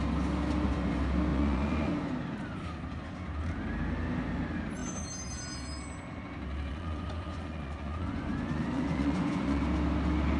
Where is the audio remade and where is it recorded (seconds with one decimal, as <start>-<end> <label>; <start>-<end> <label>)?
0.0-1.3 recorded; 1.3-2.1 remade; 2.1-6.7 recorded; 6.7-9.6 remade; 9.6-10.4 recorded